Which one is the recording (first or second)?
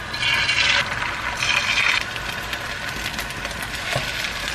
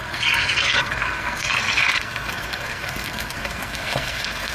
first